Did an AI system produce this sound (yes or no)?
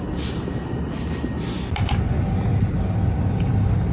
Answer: no